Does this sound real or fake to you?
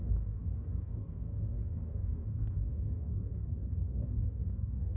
fake